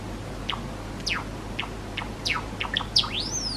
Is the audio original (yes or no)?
yes